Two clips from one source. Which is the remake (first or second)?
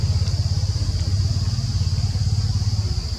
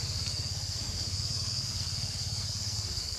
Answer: second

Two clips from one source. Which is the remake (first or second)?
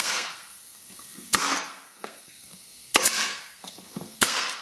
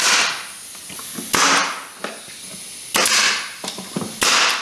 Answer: first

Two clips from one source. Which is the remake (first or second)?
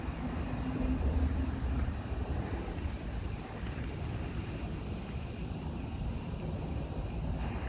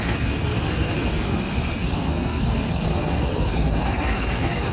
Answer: second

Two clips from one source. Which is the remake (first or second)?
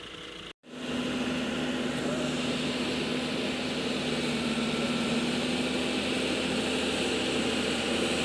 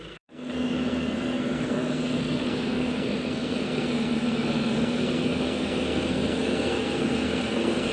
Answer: second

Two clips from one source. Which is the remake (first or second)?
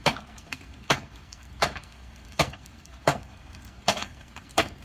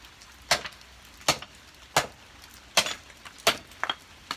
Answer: first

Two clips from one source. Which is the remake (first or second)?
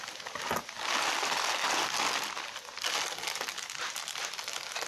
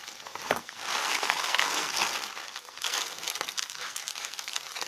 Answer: second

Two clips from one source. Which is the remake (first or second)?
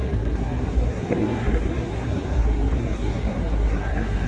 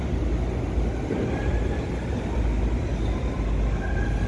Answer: first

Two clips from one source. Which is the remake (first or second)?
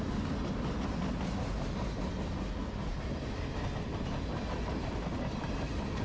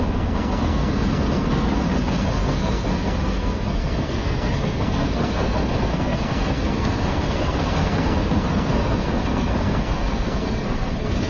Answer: second